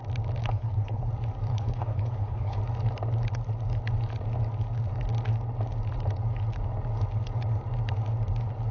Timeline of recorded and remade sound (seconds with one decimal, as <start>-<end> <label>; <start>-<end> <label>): 0.0-0.4 recorded; 0.4-1.1 remade; 1.1-1.5 recorded; 1.5-2.6 remade; 2.6-8.7 recorded